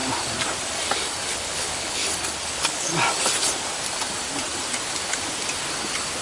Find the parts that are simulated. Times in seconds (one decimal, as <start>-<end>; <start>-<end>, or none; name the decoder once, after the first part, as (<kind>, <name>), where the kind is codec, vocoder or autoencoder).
1.3-2.0 (codec, HILCodec); 2.5-2.9